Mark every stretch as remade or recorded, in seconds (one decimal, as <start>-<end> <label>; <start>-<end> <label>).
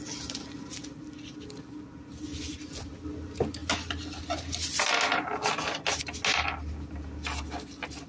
0.0-8.1 recorded